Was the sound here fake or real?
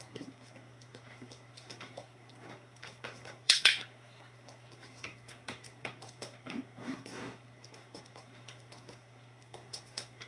fake